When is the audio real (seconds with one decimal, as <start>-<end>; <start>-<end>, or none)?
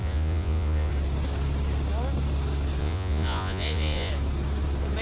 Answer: 0.9-2.8; 4.1-5.0